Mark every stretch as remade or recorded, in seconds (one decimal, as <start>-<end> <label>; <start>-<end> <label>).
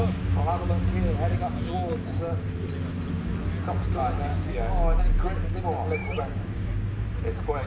0.0-4.3 recorded; 4.3-5.0 remade; 5.0-6.0 recorded; 6.0-6.9 remade; 6.9-7.7 recorded